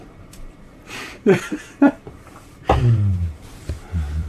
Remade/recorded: remade